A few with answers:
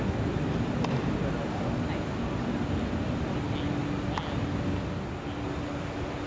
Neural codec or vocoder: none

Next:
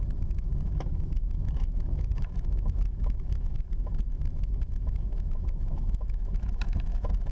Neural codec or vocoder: autoencoder, DAC-VAE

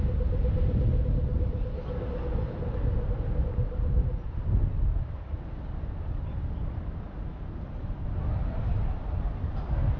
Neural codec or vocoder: none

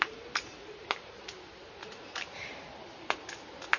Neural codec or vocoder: none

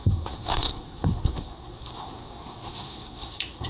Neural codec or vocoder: codec, SNAC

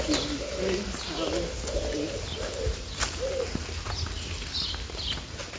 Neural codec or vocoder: none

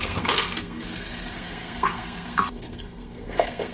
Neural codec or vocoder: codec, SNAC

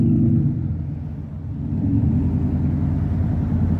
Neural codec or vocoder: none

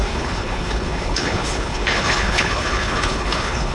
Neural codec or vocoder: codec, HILCodec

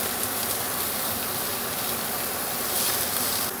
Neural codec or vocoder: vocoder, BigVGAN v2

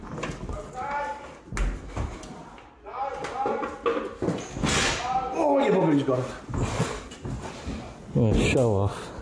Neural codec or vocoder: none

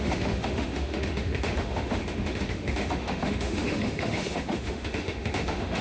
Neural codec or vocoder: autoencoder, DAC-VAE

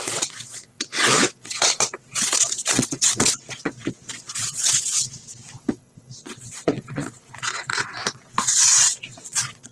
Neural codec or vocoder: vocoder, WaveNeXt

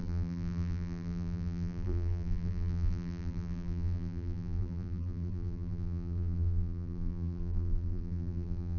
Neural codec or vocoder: vocoder, BigVGAN v2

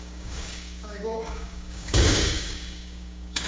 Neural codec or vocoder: codec, DAC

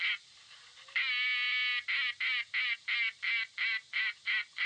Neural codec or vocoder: none